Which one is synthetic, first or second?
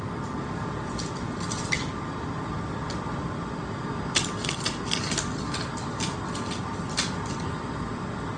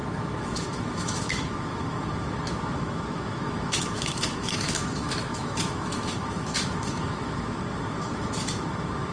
second